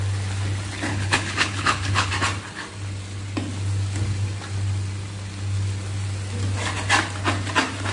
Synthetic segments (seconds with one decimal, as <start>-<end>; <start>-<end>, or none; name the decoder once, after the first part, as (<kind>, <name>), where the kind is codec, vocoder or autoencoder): 0.9-2.1 (codec, HILCodec)

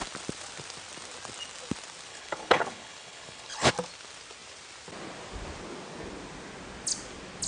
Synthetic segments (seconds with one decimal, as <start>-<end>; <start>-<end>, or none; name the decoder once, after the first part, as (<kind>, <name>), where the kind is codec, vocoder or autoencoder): 2.1-3.7 (codec, HILCodec)

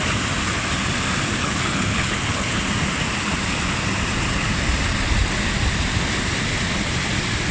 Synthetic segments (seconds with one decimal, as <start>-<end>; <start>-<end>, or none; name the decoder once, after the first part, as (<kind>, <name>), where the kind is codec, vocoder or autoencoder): 1.4-2.6 (codec, HILCodec)